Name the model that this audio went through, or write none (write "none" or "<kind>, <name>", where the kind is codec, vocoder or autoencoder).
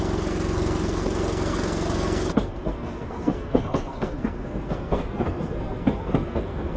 codec, SNAC